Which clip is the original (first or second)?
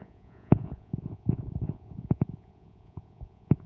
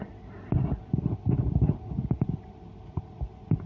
second